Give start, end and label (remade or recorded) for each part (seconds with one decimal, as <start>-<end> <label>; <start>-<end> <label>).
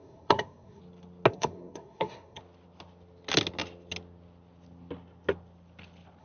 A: 0.0-0.8 remade; 0.8-1.3 recorded; 1.3-2.4 remade; 2.4-6.2 recorded